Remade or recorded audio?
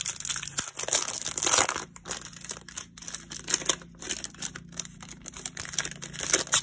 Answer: recorded